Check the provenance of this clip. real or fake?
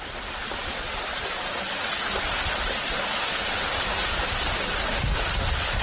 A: real